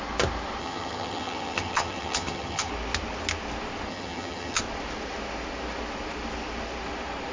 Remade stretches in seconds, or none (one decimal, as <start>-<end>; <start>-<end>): 0.6-2.7; 3.9-4.6